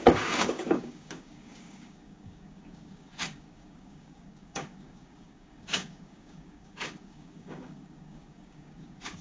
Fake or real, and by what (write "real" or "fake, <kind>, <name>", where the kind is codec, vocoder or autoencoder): fake, codec, DAC